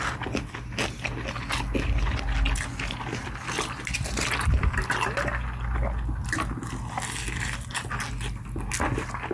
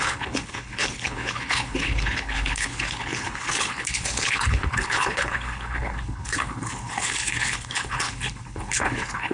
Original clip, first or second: first